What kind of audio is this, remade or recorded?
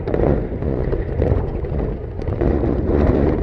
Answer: remade